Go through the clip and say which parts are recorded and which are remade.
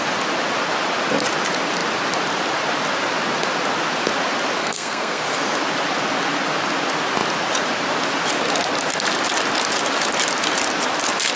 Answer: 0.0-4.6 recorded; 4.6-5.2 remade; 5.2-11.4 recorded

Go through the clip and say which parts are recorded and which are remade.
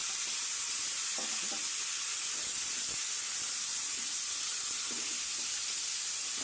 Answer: 0.0-6.4 recorded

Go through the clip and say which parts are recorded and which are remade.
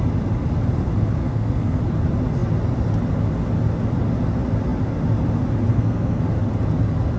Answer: 0.0-1.2 recorded; 1.2-1.8 remade; 1.8-5.7 recorded; 5.7-6.2 remade; 6.2-7.2 recorded